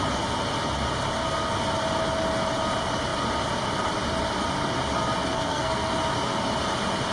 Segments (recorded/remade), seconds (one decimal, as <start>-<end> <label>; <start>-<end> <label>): 0.0-5.3 recorded; 5.3-5.9 remade; 5.9-7.1 recorded